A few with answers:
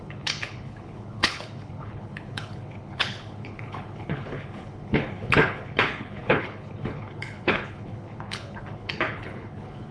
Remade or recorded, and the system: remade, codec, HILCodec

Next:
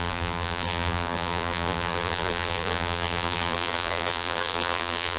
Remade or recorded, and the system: remade, vocoder, BigVGAN v2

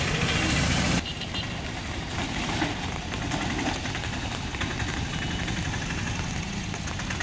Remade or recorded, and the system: recorded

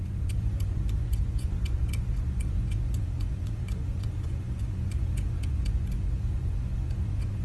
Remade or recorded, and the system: remade, vocoder, Vocos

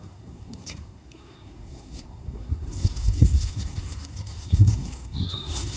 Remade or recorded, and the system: remade, codec, SNAC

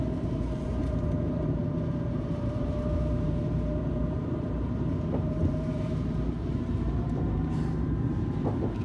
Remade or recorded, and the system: remade, vocoder, BigVGAN v2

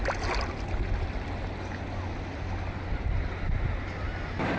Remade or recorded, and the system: recorded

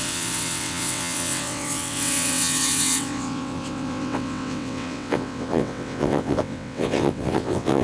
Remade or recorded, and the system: remade, vocoder, WaveNeXt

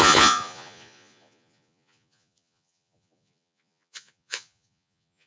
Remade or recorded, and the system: remade, vocoder, Vocos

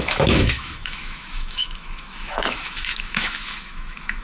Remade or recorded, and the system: remade, autoencoder, DAC-VAE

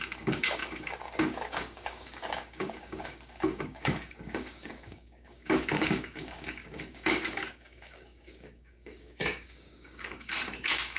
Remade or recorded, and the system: remade, codec, DAC